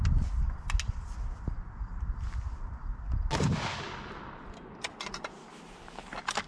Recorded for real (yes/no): yes